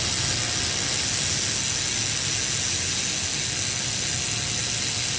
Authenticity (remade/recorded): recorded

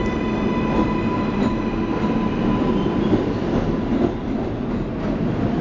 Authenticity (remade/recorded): recorded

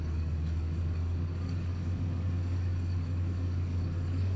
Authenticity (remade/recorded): remade